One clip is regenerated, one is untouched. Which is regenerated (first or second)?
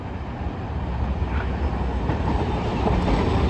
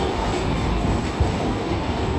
second